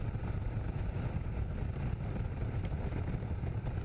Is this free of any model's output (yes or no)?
no